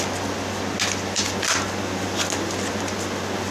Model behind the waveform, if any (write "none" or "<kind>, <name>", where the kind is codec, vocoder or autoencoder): none